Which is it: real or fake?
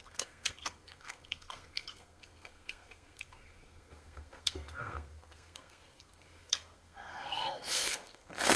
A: fake